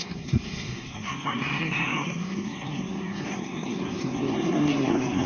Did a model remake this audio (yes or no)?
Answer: yes